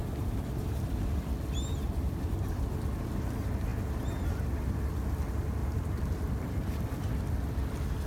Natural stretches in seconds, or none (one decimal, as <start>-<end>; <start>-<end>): 1.3-5.6; 6.8-8.1